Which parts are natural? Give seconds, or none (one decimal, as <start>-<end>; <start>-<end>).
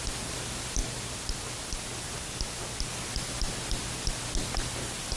0.8-2.9; 3.8-4.4